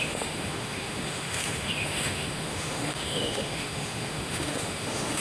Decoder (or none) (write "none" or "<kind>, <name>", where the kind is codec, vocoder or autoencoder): autoencoder, DAC-VAE